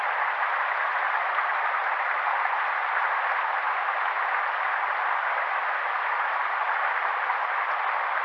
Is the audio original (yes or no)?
yes